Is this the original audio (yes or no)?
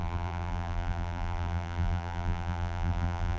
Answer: no